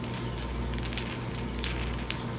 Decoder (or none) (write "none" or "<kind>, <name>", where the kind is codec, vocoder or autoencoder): none